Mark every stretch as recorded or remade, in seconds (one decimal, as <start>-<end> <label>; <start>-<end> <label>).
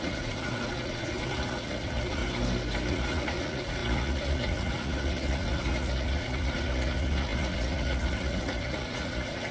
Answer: 0.0-2.2 remade; 2.2-2.9 recorded; 2.9-9.5 remade